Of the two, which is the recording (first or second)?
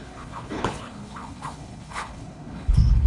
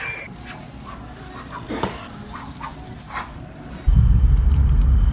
second